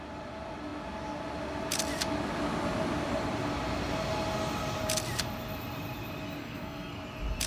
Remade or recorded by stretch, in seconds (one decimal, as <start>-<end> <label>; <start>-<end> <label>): 0.0-6.4 recorded; 6.4-7.0 remade; 7.0-7.5 recorded